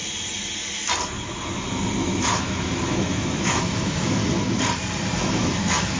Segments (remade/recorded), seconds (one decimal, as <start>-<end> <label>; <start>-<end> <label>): 0.0-2.0 recorded; 2.0-4.2 remade; 4.2-5.4 recorded; 5.4-6.0 remade